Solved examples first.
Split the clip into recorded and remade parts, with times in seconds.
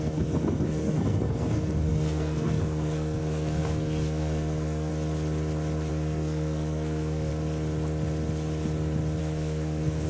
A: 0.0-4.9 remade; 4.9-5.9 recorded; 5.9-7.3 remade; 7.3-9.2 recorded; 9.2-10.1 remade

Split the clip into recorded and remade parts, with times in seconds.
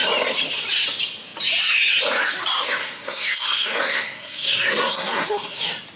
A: 0.0-2.8 recorded; 2.8-5.6 remade; 5.6-6.0 recorded